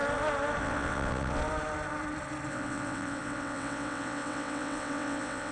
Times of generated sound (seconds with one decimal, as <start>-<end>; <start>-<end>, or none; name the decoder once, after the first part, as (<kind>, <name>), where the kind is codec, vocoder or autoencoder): 0.6-1.4 (vocoder, WaveNeXt); 2.5-5.5